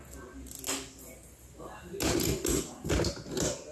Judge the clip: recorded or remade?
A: recorded